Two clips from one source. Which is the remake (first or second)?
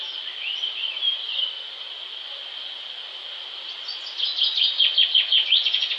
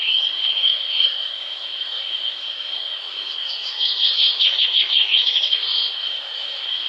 second